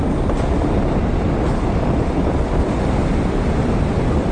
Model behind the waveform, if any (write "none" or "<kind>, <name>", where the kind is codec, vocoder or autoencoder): none